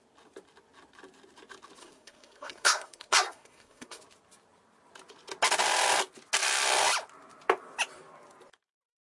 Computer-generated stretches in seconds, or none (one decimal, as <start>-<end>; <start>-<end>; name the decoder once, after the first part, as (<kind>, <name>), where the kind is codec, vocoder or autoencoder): 1.8-4.0 (codec, SNAC)